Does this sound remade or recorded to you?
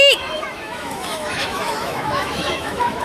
remade